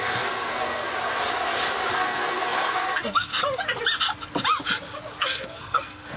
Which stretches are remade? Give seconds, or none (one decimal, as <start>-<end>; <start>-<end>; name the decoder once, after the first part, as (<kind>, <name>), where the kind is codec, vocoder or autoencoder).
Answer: 0.0-0.9 (codec, SNAC); 1.9-3.3; 5.2-6.2

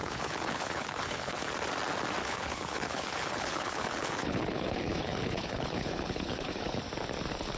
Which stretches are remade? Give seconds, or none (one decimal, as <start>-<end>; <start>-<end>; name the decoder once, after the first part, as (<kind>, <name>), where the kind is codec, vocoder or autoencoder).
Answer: 0.0-1.4 (codec, HILCodec); 2.2-6.8

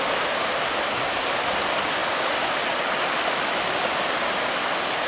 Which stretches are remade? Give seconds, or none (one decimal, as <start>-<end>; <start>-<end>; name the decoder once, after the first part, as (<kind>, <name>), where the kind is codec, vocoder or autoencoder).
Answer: none

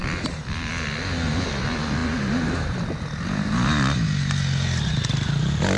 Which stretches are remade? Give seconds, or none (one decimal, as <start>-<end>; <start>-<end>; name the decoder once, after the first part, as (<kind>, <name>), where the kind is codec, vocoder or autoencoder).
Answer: none

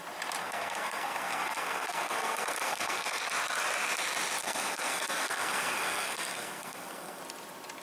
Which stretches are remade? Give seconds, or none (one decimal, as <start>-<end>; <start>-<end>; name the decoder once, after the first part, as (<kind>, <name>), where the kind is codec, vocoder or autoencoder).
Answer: 0.4-3.2 (codec, SNAC); 4.4-7.2

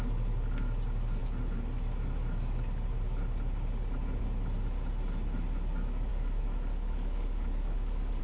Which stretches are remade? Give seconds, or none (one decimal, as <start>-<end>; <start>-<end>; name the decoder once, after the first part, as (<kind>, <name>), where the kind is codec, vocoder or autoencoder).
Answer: 6.1-8.2 (codec, DAC)

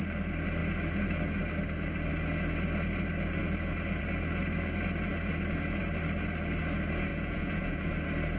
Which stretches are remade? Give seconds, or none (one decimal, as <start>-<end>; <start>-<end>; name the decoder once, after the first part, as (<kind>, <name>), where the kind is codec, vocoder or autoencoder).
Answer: 7.1-7.9 (vocoder, Vocos)

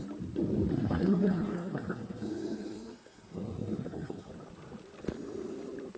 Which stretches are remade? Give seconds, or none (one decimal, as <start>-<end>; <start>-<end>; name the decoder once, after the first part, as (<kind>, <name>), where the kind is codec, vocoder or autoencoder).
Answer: 0.7-4.3 (codec, SNAC)